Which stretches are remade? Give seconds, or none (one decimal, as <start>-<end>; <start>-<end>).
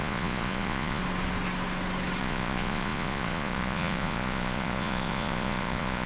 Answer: 0.0-1.0; 2.2-6.1